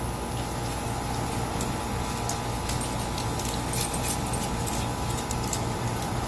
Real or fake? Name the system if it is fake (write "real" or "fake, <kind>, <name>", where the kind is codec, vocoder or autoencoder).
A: real